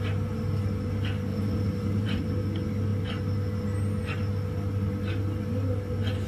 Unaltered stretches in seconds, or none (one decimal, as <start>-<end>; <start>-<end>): 0.0-1.3; 2.2-6.3